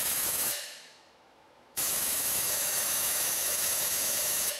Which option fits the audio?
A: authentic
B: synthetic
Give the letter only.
B